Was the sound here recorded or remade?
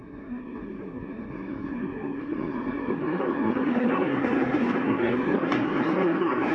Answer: remade